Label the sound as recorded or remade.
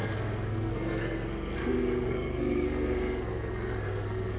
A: remade